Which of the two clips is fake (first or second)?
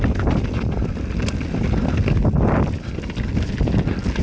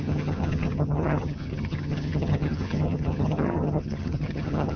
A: second